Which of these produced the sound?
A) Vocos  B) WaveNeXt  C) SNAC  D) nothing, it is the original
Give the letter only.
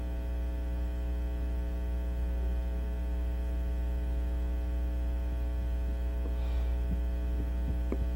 D